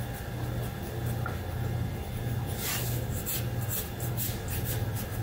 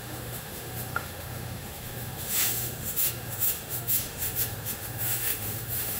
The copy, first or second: second